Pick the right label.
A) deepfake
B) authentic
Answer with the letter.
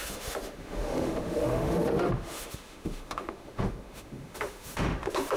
A